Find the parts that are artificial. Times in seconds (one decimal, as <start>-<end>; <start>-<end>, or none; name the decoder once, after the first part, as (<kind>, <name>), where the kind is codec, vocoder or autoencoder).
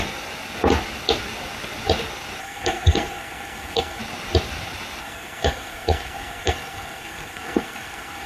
2.4-4.0 (codec, SNAC); 5.0-8.3